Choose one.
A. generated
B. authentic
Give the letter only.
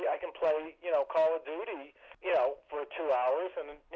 B